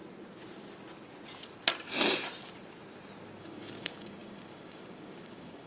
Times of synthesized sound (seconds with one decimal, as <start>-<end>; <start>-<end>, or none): 3.4-5.7